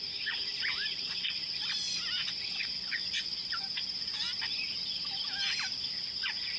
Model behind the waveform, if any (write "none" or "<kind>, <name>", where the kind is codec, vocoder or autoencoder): none